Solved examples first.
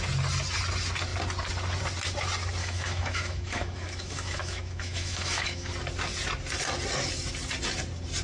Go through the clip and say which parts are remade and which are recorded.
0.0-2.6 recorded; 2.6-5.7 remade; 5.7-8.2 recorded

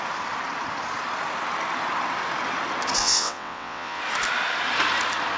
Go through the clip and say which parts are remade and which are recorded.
0.0-3.0 recorded; 3.0-4.0 remade; 4.0-5.4 recorded

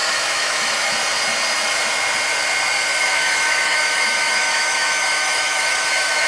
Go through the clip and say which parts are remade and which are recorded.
0.0-0.9 remade; 0.9-2.9 recorded; 2.9-6.3 remade

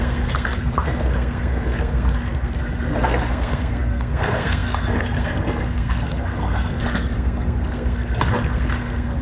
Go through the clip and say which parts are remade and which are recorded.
0.0-9.2 remade

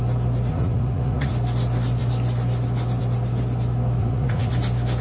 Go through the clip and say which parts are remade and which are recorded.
0.0-0.5 recorded; 0.5-1.3 remade; 1.3-4.0 recorded; 4.0-4.5 remade; 4.5-5.0 recorded